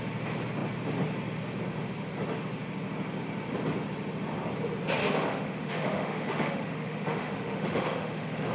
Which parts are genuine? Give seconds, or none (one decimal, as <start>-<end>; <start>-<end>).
0.0-5.0